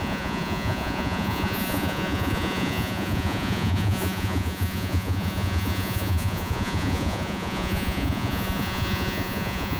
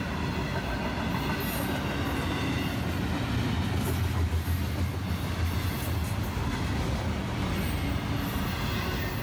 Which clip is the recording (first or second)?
second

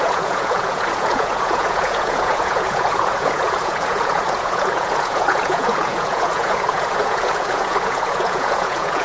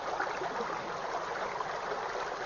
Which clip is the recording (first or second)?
second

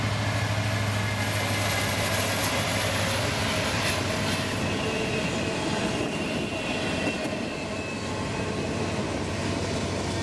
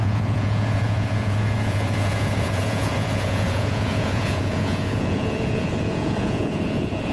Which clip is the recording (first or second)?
first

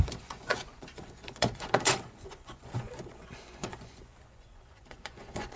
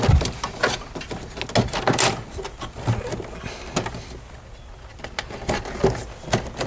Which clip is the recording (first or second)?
second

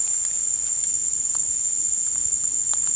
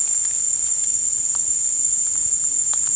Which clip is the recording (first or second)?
second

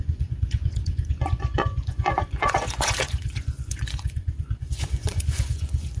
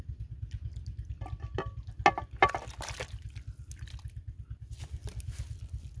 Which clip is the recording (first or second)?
second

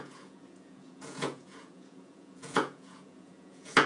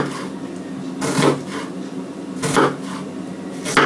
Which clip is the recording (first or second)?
second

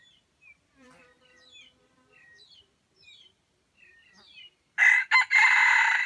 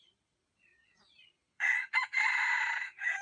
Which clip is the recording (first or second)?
first